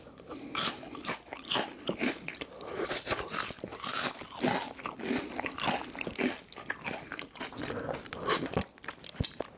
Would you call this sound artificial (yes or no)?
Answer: no